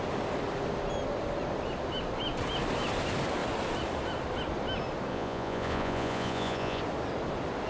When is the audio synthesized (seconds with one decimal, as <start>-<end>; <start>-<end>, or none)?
5.1-6.8